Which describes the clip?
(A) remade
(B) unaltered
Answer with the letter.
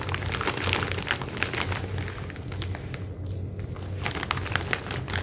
B